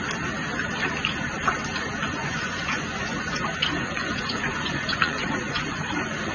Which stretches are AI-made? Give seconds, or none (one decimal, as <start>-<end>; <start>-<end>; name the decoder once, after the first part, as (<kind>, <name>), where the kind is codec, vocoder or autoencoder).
2.2-6.3 (vocoder, Vocos)